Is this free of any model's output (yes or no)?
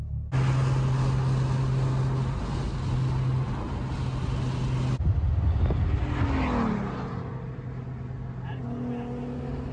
yes